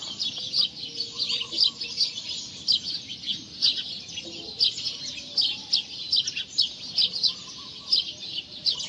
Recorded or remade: recorded